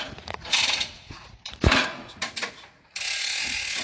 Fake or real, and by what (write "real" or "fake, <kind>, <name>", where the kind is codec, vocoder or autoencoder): fake, vocoder, Vocos